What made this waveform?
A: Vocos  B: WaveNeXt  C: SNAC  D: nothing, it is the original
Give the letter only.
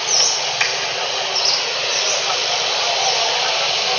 D